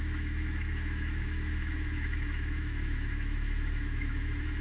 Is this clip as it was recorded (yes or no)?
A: no